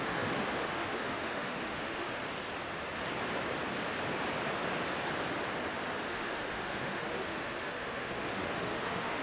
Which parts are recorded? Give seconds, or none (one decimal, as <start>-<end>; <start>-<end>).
2.2-6.1

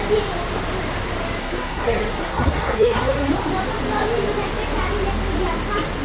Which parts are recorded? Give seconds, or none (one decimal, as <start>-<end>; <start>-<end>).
0.0-1.4; 3.3-6.0

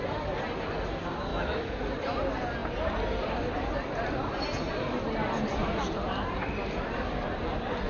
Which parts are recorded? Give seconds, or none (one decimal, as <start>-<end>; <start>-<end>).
0.0-1.3; 1.8-7.9

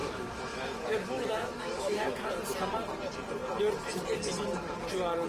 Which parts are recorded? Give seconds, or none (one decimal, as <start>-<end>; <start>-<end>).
2.2-5.3

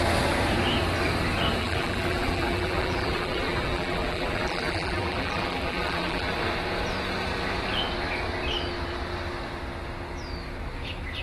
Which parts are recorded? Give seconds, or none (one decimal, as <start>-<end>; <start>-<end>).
0.0-1.6; 6.3-11.2